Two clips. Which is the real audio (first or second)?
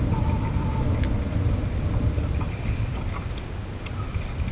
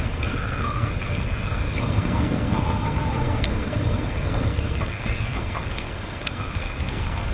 first